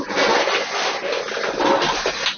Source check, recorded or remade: recorded